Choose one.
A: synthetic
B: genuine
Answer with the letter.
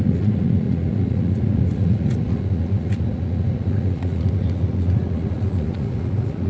A